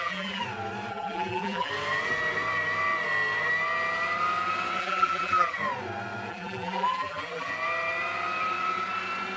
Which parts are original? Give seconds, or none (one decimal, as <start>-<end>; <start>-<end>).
0.4-0.9; 1.7-4.8; 5.6-6.3; 7.5-9.4